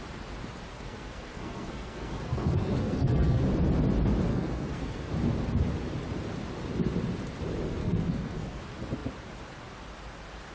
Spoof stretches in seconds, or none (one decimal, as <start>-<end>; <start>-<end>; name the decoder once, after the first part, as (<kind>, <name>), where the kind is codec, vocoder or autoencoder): 0.7-3.4 (codec, SNAC); 4.3-5.1; 7.8-8.6